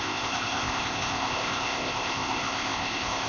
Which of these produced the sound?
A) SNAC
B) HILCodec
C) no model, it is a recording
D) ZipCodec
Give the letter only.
D